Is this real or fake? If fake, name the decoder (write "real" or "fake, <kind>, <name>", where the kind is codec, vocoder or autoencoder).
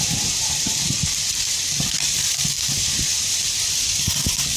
fake, vocoder, BigVGAN v2